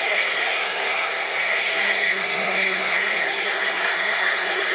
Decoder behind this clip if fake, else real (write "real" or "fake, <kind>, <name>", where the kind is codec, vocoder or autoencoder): fake, codec, SNAC